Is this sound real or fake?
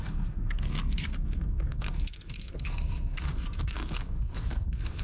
fake